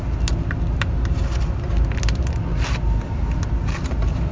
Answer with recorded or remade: recorded